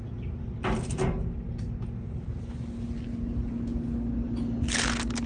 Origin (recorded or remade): recorded